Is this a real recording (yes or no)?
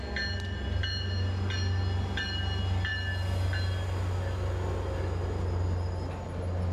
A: yes